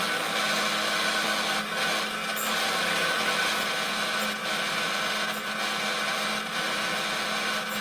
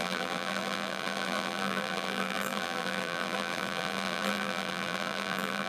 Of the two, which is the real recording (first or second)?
first